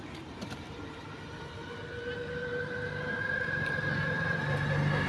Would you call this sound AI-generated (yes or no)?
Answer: no